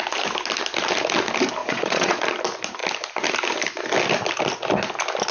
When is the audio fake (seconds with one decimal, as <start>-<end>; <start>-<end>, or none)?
1.6-2.2